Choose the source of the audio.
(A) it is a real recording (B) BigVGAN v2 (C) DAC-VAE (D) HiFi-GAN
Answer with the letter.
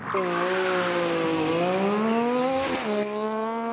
A